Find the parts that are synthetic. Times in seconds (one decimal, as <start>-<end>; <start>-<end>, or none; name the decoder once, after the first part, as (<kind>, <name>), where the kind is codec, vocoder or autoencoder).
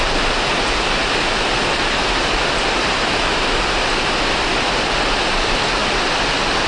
none